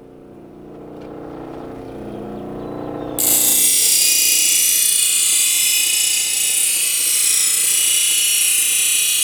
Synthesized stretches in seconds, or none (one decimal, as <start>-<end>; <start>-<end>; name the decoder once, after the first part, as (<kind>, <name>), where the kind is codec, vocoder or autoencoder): none